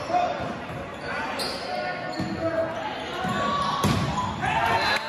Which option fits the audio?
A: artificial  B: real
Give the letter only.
B